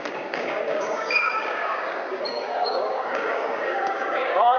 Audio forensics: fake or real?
fake